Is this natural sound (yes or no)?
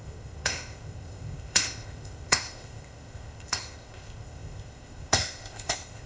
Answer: no